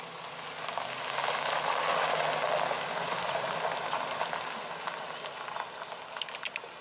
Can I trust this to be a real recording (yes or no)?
yes